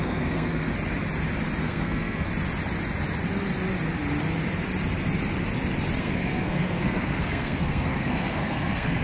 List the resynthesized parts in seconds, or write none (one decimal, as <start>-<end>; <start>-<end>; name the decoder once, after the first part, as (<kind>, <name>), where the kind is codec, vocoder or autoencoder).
0.0-0.7 (codec, SNAC); 1.6-2.3; 6.0-9.0